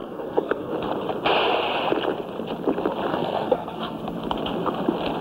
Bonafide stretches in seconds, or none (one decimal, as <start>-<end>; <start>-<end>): 0.7-3.1; 4.0-5.2